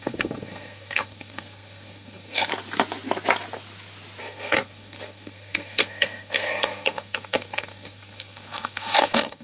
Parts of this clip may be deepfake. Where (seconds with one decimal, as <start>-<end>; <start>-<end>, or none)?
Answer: 0.0-2.5; 4.2-9.4